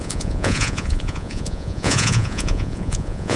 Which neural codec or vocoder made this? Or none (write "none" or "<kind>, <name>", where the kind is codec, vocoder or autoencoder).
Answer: vocoder, Vocos